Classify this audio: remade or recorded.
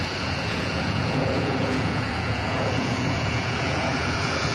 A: remade